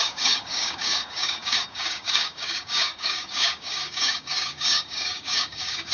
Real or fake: fake